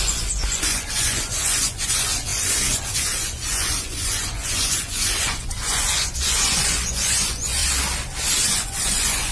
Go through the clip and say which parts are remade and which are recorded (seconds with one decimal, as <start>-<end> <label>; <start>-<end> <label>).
0.0-7.6 remade; 7.6-8.5 recorded; 8.5-9.3 remade